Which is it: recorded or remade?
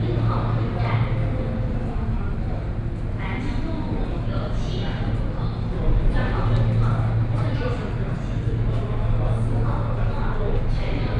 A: recorded